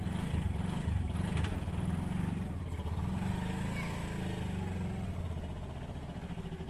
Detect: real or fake real